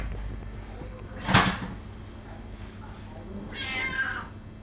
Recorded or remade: recorded